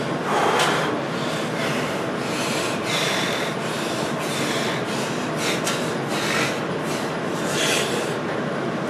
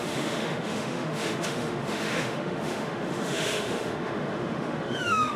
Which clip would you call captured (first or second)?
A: first